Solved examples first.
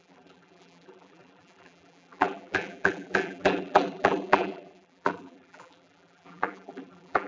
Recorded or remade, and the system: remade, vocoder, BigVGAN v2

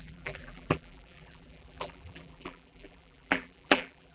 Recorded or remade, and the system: remade, vocoder, BigVGAN v2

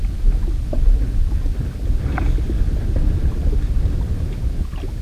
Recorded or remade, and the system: recorded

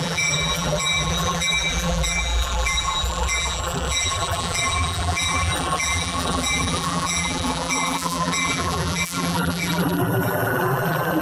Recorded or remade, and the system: remade, vocoder, BigVGAN v2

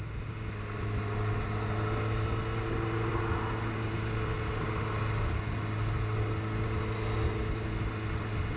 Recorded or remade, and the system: recorded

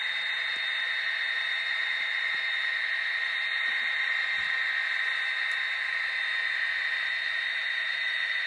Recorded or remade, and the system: remade, vocoder, BigVGAN v2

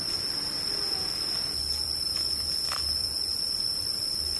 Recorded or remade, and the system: remade, vocoder, BigVGAN v2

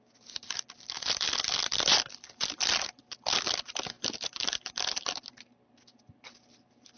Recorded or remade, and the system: recorded